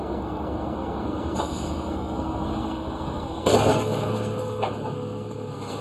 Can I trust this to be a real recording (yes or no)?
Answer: no